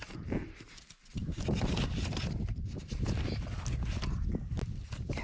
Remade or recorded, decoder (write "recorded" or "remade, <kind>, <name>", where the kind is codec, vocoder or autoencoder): recorded